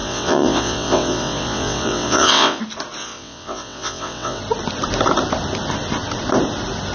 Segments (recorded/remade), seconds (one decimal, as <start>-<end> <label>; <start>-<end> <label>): 0.0-2.6 remade; 2.6-3.0 recorded; 3.0-4.4 remade; 4.4-6.9 recorded